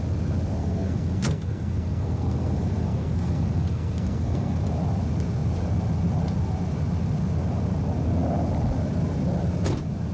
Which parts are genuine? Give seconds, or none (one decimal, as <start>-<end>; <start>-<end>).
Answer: 0.0-0.6; 4.6-10.1